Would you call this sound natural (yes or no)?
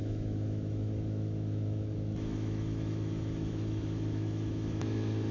no